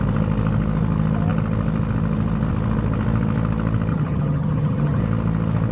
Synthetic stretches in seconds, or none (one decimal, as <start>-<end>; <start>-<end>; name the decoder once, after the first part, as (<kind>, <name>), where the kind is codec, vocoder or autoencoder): 3.9-5.0 (vocoder, HiFi-GAN)

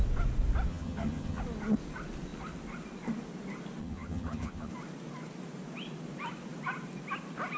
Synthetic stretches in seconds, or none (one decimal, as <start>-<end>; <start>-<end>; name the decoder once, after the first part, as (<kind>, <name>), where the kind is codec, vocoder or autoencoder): 0.7-1.4 (vocoder, HiFi-GAN); 3.8-4.7

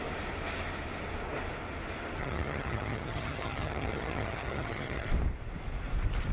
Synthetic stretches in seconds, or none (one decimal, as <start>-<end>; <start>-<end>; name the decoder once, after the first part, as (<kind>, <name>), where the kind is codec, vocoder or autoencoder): 2.2-5.1 (vocoder, HiFi-GAN)

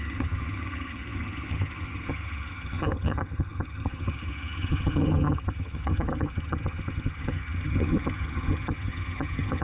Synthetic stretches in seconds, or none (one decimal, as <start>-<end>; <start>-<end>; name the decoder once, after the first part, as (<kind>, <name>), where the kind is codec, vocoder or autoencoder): 0.0-9.6 (vocoder, HiFi-GAN)

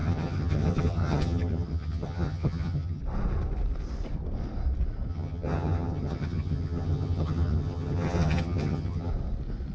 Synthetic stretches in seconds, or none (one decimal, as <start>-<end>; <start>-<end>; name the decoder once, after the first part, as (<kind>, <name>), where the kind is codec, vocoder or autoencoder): 0.0-3.0 (vocoder, HiFi-GAN); 5.1-9.1

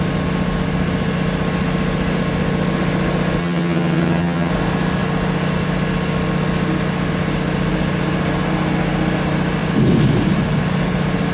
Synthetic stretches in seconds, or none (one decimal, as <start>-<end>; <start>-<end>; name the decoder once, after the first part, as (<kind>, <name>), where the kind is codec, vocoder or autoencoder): 3.4-4.5 (vocoder, HiFi-GAN)

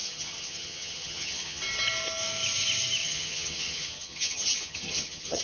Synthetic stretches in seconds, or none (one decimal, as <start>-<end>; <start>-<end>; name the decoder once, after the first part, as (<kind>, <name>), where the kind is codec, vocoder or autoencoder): 0.0-1.6 (vocoder, HiFi-GAN); 3.0-5.4

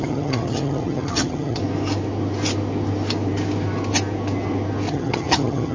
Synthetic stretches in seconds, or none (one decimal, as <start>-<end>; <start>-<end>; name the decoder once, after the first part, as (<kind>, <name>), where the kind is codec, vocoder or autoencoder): 0.0-1.6 (vocoder, HiFi-GAN); 4.9-5.7